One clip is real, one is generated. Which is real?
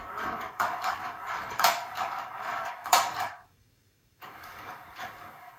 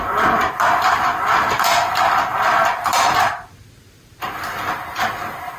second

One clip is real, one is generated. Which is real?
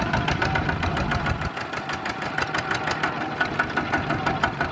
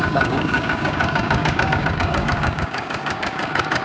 first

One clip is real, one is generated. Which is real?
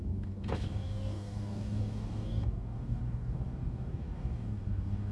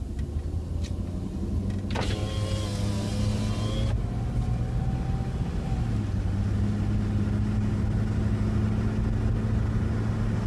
second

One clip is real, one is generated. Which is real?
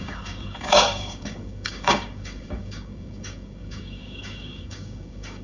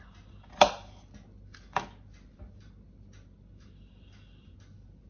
second